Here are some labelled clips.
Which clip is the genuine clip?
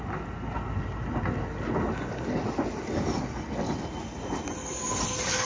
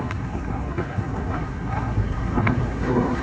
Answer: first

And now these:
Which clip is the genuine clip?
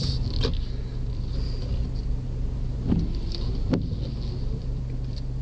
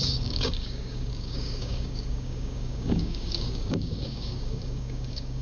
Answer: first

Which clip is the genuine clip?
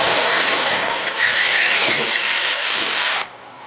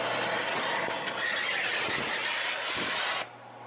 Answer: second